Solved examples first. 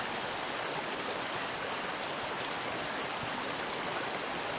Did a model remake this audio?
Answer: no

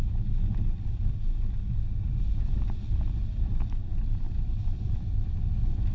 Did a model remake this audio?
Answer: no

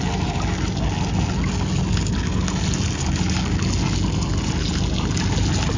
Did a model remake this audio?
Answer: no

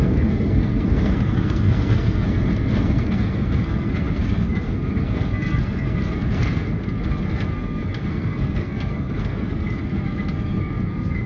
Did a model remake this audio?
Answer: yes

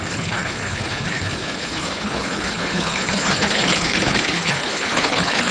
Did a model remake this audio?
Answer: yes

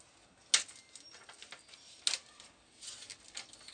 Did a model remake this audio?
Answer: no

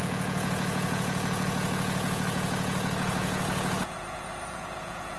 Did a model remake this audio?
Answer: yes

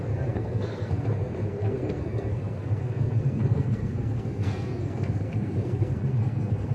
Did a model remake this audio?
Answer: yes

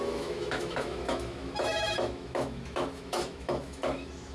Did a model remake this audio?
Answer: yes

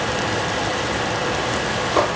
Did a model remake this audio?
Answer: no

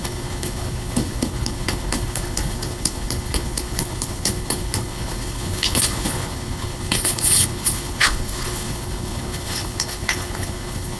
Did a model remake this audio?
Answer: yes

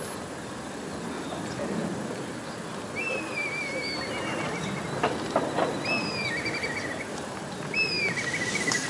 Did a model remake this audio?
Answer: no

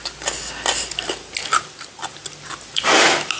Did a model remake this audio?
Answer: no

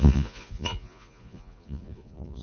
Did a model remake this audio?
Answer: yes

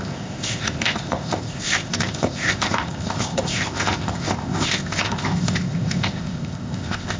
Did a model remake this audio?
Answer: yes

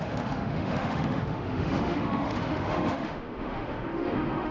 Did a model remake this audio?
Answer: yes